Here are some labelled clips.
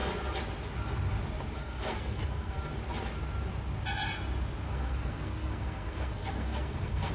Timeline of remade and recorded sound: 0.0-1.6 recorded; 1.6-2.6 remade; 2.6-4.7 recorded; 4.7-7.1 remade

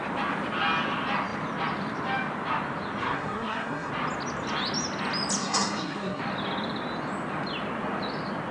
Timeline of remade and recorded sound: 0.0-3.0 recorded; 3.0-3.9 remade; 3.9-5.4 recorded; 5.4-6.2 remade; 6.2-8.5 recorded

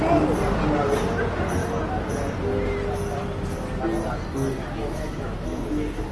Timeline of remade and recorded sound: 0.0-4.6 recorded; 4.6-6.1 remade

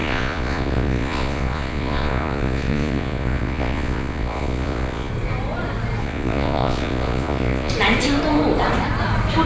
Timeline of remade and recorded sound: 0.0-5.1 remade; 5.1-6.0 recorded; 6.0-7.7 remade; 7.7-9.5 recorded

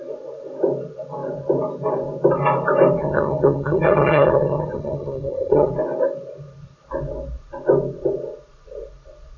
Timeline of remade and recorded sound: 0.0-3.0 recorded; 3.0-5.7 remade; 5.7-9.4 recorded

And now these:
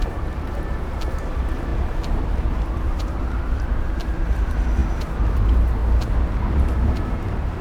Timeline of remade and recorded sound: 0.0-5.8 remade; 5.8-6.5 recorded; 6.5-7.6 remade